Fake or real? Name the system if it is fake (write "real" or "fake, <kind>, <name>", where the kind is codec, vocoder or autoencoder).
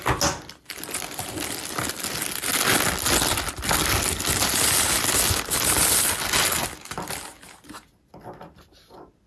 real